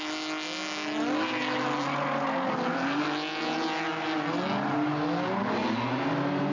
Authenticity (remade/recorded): recorded